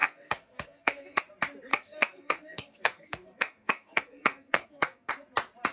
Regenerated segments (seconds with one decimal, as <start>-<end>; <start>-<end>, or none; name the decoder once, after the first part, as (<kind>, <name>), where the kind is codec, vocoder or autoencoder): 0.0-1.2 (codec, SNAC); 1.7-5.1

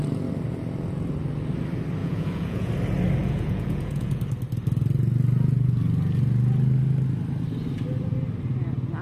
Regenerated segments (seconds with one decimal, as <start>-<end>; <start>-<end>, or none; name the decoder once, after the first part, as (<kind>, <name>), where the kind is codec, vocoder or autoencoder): 2.0-2.7 (vocoder, Vocos); 3.2-4.2

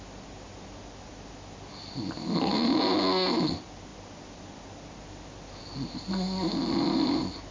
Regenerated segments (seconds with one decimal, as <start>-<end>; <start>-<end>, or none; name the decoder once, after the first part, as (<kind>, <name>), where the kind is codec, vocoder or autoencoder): none

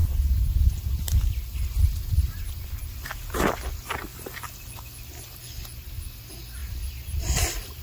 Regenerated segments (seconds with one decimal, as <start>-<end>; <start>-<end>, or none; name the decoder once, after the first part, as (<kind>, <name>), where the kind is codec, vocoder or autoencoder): 0.0-3.1 (vocoder, BigVGAN v2); 6.6-7.8